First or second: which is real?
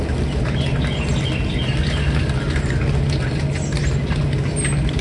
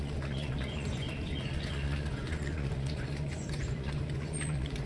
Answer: first